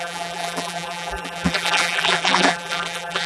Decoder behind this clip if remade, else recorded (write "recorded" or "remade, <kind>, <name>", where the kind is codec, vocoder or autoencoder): remade, vocoder, BigVGAN v2